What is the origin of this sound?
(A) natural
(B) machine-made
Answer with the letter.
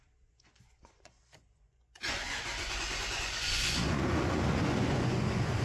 B